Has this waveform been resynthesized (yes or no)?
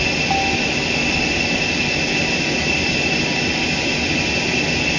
no